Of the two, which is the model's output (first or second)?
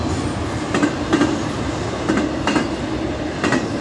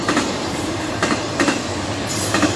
second